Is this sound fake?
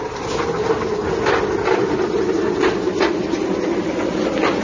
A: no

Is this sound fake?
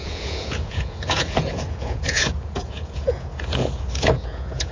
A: yes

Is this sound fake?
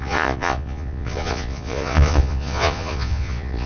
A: yes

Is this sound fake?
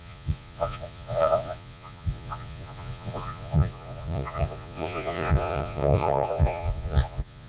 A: yes